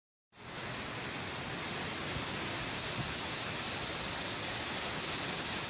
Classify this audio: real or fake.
real